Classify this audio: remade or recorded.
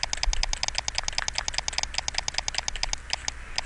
recorded